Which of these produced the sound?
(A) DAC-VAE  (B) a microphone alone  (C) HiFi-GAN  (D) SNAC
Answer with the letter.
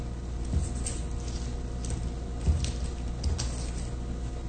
B